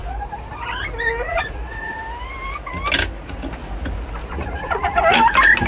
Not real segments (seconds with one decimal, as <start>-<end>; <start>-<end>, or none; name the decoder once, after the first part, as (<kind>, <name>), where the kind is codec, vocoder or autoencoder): 0.0-0.5 (vocoder, Vocos); 1.3-2.0; 4.2-5.0